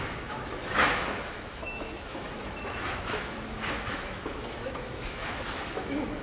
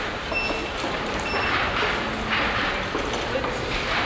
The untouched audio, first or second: second